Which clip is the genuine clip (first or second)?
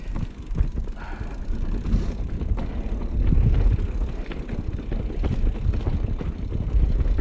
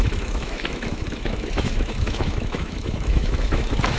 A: first